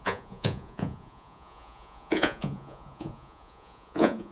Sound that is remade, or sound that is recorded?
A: remade